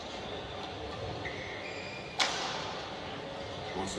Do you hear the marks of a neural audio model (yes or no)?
no